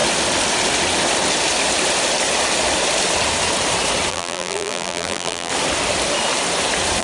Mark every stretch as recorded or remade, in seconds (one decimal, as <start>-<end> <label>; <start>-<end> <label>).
0.0-4.1 recorded; 4.1-5.5 remade; 5.5-7.0 recorded